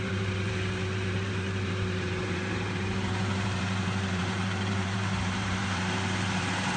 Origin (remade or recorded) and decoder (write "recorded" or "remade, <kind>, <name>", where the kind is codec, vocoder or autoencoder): remade, vocoder, BigVGAN v2